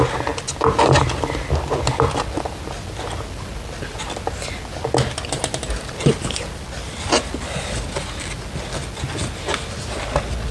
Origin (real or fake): real